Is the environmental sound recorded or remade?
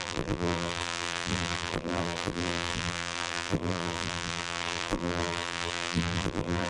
remade